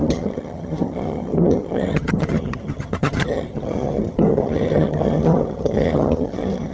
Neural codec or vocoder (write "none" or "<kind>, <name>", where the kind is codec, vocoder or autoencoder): vocoder, HiFi-GAN